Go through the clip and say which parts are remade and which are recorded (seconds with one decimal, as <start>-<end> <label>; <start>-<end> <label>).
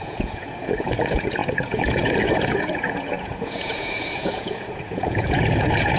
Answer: 0.0-6.0 remade